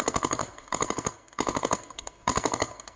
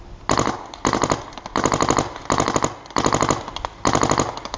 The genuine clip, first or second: second